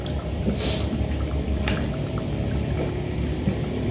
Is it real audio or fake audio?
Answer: fake